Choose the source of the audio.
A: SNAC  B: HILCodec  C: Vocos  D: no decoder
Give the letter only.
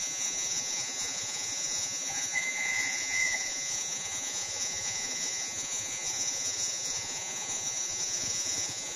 C